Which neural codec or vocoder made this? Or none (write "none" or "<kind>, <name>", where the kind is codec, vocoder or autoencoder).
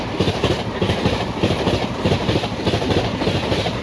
vocoder, BigVGAN v2